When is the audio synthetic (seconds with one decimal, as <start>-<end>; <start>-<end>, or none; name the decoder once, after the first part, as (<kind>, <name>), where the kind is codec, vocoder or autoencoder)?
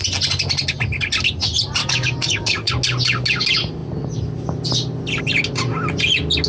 1.8-2.7 (codec, DAC)